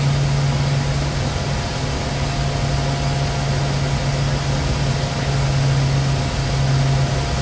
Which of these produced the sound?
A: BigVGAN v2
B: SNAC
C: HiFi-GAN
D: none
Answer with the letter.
D